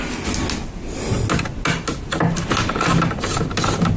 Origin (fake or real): real